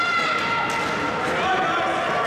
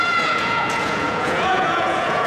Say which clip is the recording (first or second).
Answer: first